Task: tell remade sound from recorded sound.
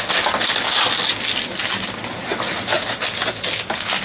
recorded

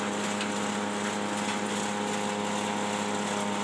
recorded